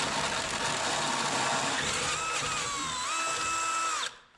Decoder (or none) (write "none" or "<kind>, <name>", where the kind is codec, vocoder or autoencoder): none